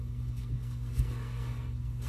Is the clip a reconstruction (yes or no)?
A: yes